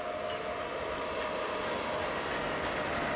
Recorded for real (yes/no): yes